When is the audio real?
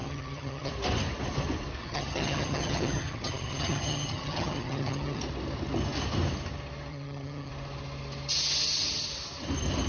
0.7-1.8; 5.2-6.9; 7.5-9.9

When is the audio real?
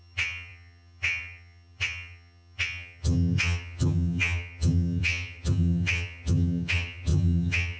none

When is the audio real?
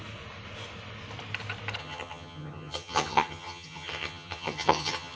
0.0-1.8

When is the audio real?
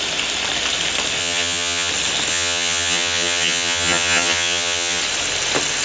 0.0-1.2; 1.9-2.3; 5.0-5.8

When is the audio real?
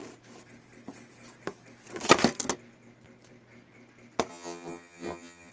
0.0-4.3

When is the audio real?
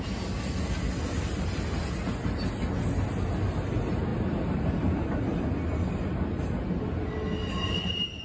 0.0-8.2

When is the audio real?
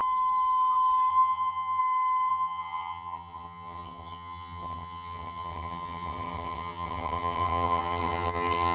0.0-1.1; 1.8-2.3